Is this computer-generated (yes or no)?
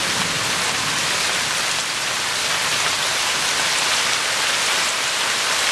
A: no